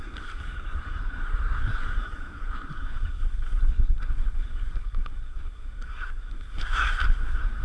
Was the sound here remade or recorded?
remade